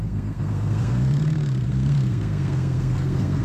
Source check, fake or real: fake